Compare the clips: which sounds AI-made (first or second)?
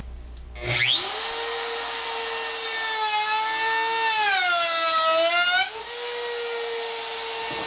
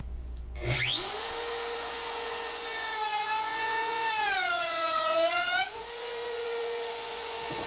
second